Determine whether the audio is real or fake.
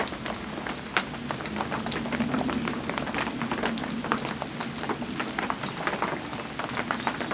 real